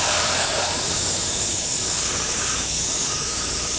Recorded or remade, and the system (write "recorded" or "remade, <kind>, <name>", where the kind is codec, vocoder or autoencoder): remade, codec, DAC